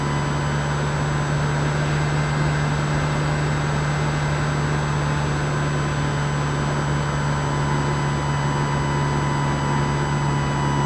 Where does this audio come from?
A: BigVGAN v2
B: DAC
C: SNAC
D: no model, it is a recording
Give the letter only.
D